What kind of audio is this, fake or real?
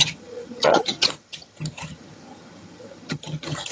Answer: fake